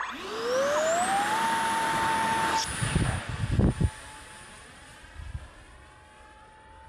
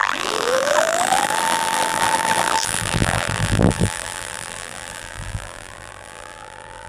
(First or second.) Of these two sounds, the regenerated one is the second